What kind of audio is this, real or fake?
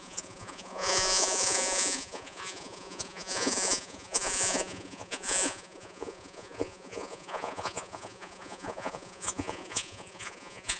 fake